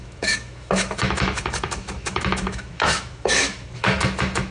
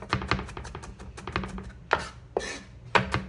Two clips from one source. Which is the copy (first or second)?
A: first